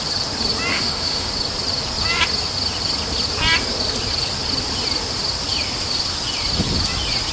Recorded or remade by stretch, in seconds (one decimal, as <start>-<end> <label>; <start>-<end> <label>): 0.0-0.7 recorded; 0.7-1.3 remade; 1.3-7.3 recorded

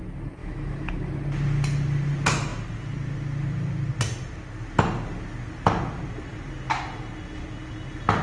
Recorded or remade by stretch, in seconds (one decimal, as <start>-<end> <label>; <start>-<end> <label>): 0.0-0.4 recorded; 0.4-0.9 remade; 0.9-8.2 recorded

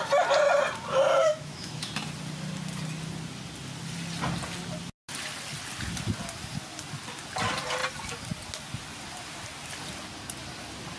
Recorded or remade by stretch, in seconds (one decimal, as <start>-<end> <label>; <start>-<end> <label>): 0.0-1.2 recorded; 1.2-1.9 remade; 1.9-11.0 recorded

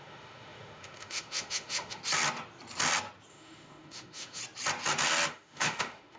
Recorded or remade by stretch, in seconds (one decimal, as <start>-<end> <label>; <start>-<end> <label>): 0.0-2.0 remade; 2.0-3.3 recorded; 3.3-4.4 remade; 4.4-5.3 recorded; 5.3-6.2 remade